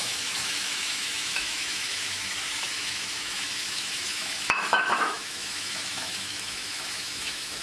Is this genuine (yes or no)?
no